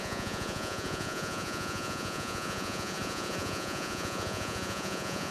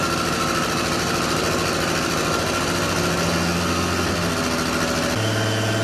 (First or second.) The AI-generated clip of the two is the first